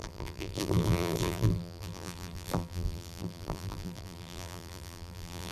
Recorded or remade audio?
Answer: remade